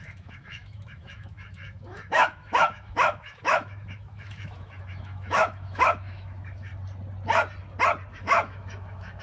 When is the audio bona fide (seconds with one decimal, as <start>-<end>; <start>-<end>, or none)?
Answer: 6.7-8.1